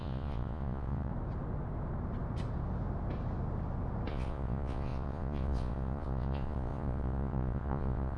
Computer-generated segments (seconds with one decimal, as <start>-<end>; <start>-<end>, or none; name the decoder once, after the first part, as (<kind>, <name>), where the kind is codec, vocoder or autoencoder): 0.0-1.1 (vocoder, Vocos); 4.1-8.2